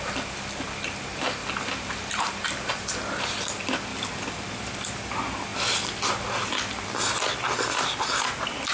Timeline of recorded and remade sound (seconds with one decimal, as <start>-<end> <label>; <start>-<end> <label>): 0.0-1.4 recorded; 1.4-2.7 remade; 2.7-3.9 recorded; 3.9-4.8 remade; 4.8-5.5 recorded; 5.5-8.1 remade; 8.1-8.7 recorded